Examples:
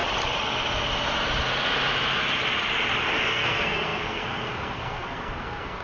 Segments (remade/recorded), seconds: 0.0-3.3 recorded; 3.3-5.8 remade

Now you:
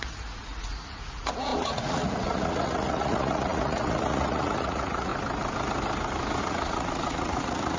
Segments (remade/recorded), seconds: 0.0-5.1 remade; 5.1-6.4 recorded; 6.4-7.8 remade

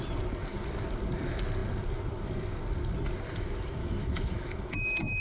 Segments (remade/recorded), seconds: 0.0-3.8 recorded; 3.8-4.7 remade; 4.7-5.2 recorded

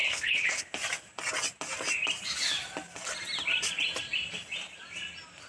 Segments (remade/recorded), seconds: 0.0-0.6 remade; 0.6-5.5 recorded

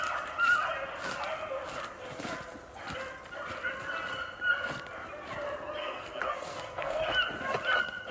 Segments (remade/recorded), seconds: 0.0-5.8 recorded; 5.8-7.0 remade; 7.0-8.1 recorded